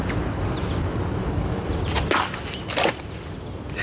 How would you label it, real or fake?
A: real